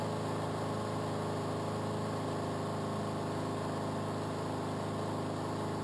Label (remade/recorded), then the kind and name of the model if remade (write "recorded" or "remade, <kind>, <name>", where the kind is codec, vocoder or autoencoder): recorded